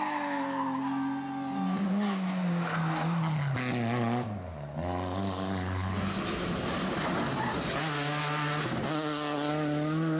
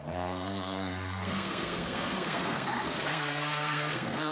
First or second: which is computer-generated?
second